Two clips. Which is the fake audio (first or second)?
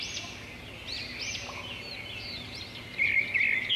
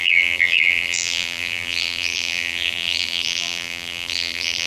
second